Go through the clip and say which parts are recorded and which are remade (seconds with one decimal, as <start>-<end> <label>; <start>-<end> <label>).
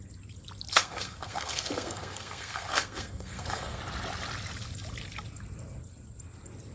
0.0-0.7 recorded; 0.7-3.8 remade; 3.8-6.7 recorded